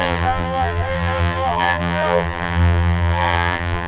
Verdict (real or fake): fake